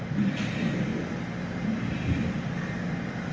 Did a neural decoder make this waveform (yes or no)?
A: no